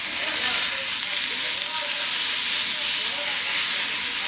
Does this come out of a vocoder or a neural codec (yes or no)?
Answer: no